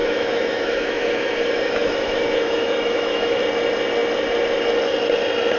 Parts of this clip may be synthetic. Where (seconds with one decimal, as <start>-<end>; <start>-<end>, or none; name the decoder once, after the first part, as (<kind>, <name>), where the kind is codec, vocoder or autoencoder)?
0.0-3.4 (autoencoder, DAC-VAE)